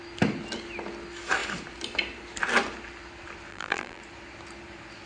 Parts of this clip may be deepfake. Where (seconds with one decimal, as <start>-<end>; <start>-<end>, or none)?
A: 3.5-4.0